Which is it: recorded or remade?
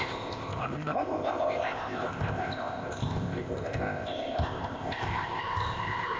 remade